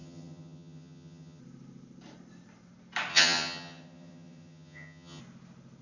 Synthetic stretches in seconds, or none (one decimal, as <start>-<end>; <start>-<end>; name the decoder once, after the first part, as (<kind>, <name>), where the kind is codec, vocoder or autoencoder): 0.0-1.4 (vocoder, HiFi-GAN); 3.1-5.2